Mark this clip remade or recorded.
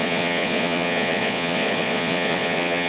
remade